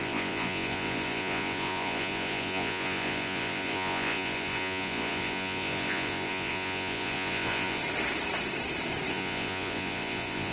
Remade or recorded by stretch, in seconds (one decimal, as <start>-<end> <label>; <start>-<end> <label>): 0.0-7.8 remade; 7.8-9.1 recorded; 9.1-10.5 remade